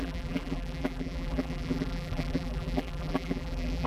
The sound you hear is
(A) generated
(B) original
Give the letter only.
A